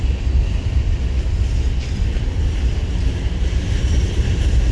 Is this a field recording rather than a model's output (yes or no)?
yes